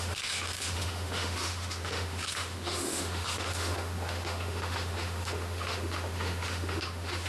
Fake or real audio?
fake